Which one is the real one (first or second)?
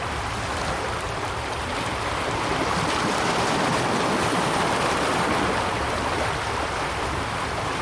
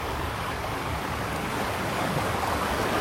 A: first